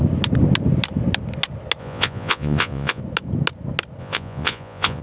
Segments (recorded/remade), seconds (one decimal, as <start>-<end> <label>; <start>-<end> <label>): 0.0-1.8 recorded; 1.8-3.0 remade; 3.0-4.0 recorded; 4.0-5.0 remade